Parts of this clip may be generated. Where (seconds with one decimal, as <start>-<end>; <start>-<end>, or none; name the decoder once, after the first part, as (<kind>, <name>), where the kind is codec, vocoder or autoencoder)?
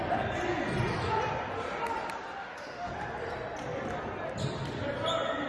2.4-2.9 (autoencoder, DAC-VAE)